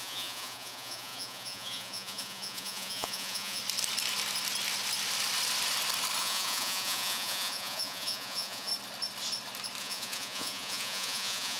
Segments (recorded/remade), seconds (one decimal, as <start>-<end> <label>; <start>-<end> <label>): 0.0-3.6 remade; 3.6-6.2 recorded; 6.2-8.7 remade; 8.7-9.8 recorded; 9.8-11.6 remade